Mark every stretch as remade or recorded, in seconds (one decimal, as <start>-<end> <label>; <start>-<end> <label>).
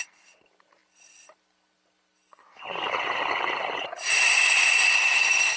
0.0-5.6 recorded